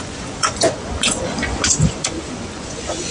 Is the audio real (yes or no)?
no